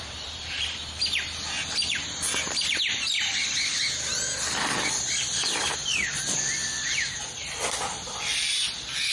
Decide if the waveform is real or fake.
real